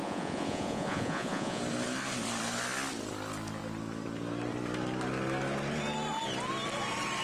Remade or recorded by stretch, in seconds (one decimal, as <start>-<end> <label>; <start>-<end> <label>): 0.0-1.6 remade; 1.6-7.2 recorded